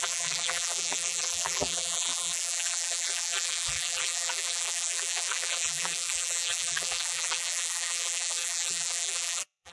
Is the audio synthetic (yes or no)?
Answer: yes